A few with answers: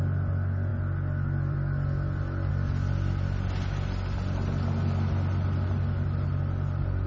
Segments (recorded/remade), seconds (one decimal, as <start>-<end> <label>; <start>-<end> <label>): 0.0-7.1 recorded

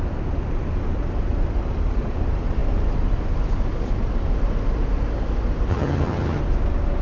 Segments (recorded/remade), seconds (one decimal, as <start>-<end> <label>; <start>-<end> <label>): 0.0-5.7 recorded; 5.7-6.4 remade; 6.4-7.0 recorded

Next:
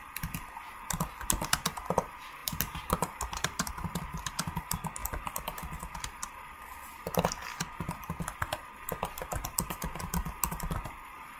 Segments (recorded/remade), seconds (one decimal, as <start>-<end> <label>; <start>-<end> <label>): 0.0-2.4 recorded; 2.4-3.7 remade; 3.7-11.4 recorded

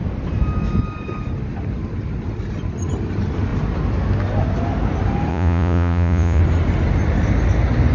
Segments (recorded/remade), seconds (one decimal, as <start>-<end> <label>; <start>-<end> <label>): 0.0-5.3 recorded; 5.3-6.4 remade; 6.4-7.9 recorded

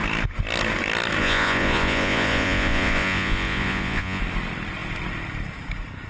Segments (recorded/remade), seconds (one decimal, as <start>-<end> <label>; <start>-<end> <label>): 0.0-1.2 recorded; 1.2-4.2 remade; 4.2-6.1 recorded